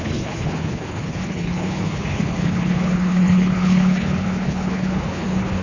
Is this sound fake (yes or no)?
yes